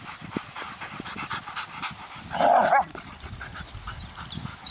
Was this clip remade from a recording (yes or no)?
no